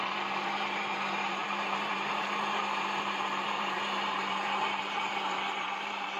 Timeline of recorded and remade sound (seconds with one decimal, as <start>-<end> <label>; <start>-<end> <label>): 0.0-6.2 remade